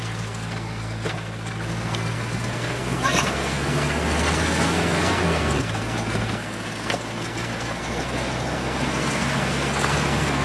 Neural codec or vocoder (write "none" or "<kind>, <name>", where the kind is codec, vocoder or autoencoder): codec, SNAC